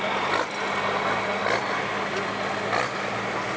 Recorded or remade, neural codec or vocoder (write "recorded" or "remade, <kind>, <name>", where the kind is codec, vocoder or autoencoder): recorded